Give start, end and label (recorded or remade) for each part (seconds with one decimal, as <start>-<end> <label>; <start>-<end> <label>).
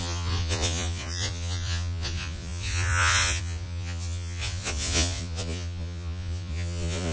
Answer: 0.0-7.1 remade